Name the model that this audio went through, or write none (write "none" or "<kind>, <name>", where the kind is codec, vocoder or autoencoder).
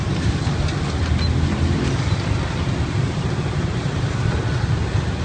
none